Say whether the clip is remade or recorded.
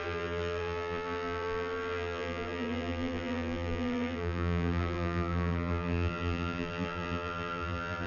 remade